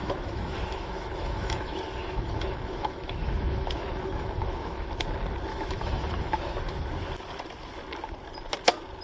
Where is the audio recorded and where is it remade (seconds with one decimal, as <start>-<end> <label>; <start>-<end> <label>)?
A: 0.0-4.9 remade; 4.9-5.5 recorded; 5.5-6.5 remade; 6.5-9.0 recorded